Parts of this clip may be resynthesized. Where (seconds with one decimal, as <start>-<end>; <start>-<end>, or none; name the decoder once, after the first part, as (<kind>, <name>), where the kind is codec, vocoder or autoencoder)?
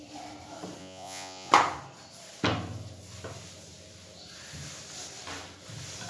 0.8-1.5 (vocoder, Vocos)